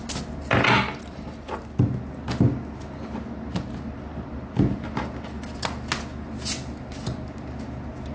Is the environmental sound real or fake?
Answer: real